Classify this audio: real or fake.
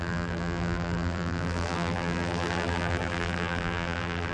fake